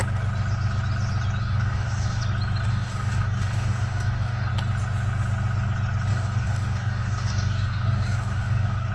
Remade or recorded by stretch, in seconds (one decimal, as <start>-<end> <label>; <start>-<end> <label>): 0.0-1.4 recorded; 1.4-2.2 remade; 2.2-2.7 recorded; 2.7-4.5 remade; 4.5-6.1 recorded; 6.1-8.9 remade